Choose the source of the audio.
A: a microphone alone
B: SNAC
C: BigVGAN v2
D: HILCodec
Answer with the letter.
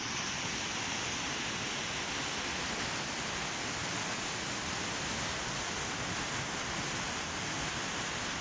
A